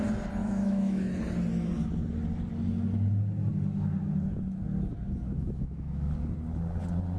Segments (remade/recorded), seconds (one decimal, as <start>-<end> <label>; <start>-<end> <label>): 0.0-0.4 recorded; 0.4-1.2 remade; 1.2-5.4 recorded; 5.4-6.1 remade; 6.1-7.2 recorded